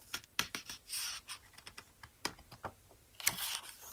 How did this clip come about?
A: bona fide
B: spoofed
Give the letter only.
A